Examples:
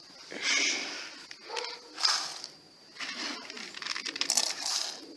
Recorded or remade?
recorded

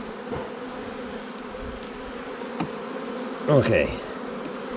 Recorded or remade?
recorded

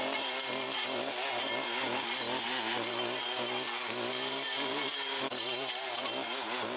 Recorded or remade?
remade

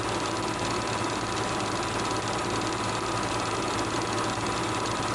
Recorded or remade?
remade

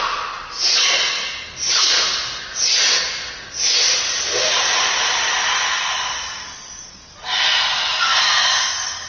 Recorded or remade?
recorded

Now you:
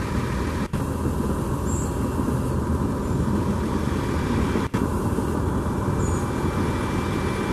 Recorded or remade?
recorded